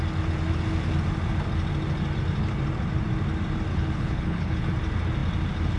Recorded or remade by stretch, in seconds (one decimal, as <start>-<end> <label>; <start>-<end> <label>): 0.0-3.7 recorded; 3.7-4.7 remade; 4.7-5.8 recorded